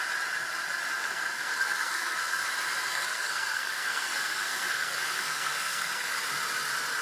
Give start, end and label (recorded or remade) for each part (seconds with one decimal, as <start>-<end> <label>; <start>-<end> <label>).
0.0-1.0 recorded; 1.0-2.4 remade; 2.4-2.9 recorded; 2.9-6.2 remade; 6.2-7.0 recorded